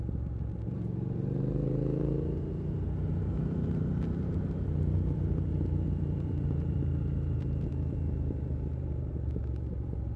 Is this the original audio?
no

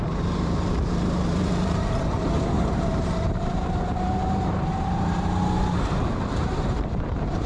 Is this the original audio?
no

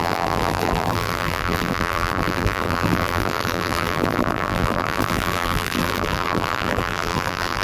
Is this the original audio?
no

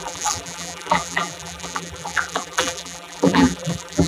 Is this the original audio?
no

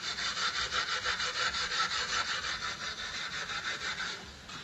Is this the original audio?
yes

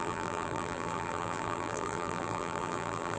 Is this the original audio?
no